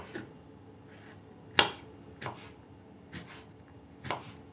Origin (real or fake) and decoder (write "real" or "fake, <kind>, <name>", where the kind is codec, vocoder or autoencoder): real